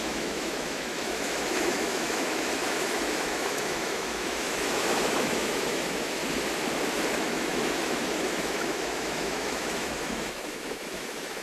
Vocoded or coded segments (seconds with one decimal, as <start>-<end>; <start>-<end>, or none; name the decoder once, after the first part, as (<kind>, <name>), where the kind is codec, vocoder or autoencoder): 0.0-6.2 (autoencoder, DAC-VAE); 7.1-11.4